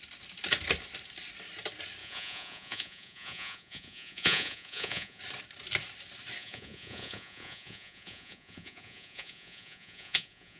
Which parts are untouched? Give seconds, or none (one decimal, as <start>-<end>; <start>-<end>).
0.0-2.0; 5.2-6.4